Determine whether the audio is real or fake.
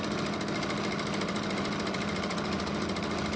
real